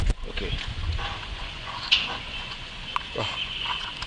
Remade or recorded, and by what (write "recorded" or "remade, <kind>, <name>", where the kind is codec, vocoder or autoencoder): remade, vocoder, Vocos